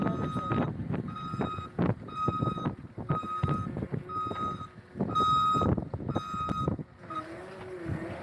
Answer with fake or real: real